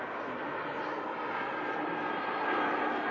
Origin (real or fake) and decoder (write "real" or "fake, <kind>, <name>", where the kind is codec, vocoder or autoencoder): real